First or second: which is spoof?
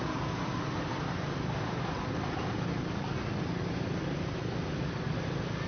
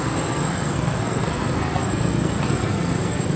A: second